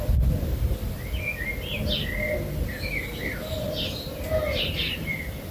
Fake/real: real